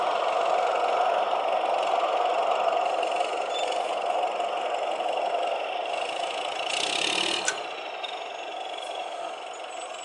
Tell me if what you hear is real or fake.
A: real